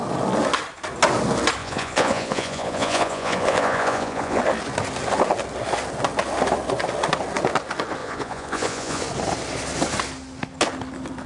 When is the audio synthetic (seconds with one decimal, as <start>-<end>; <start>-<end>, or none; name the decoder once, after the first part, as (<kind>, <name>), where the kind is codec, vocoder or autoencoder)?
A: 1.6-4.4 (vocoder, Vocos); 8.0-9.0